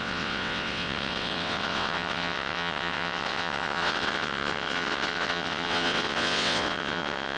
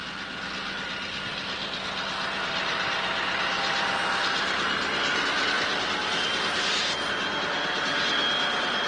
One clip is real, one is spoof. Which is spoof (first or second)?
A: first